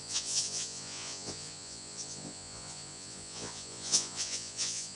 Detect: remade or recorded remade